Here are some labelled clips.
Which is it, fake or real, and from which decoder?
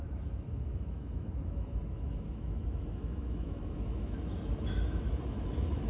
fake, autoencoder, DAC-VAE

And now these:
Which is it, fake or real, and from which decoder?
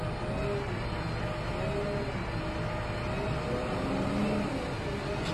real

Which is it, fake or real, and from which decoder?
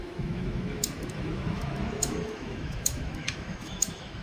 fake, autoencoder, DAC-VAE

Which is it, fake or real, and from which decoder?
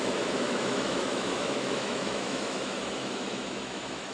fake, autoencoder, DAC-VAE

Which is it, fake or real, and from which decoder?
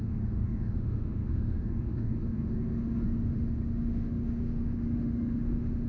fake, autoencoder, DAC-VAE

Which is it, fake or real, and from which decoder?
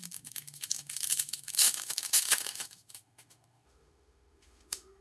fake, autoencoder, DAC-VAE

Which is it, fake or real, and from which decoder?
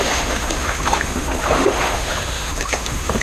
fake, autoencoder, DAC-VAE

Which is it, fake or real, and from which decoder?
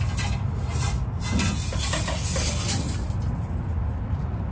real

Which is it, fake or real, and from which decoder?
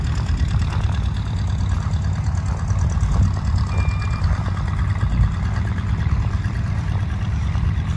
real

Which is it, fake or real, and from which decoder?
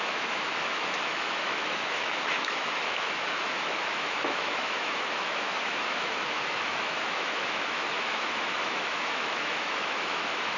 fake, autoencoder, DAC-VAE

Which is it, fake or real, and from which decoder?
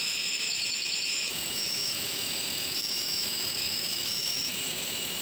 fake, autoencoder, DAC-VAE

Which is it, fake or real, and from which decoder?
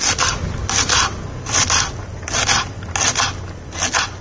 real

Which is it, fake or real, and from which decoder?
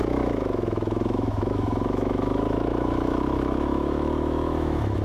fake, autoencoder, DAC-VAE